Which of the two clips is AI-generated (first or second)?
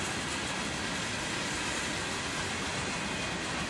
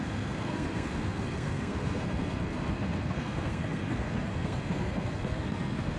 second